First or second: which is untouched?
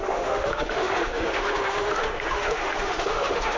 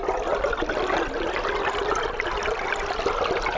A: second